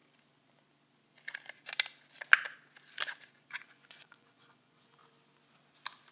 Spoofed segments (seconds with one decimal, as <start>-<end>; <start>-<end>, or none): 3.3-5.0